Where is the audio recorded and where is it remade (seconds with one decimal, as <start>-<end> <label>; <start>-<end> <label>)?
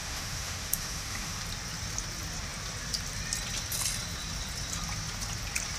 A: 0.0-1.4 remade; 1.4-5.8 recorded